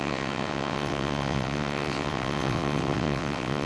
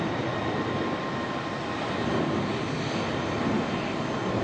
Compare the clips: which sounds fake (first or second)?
first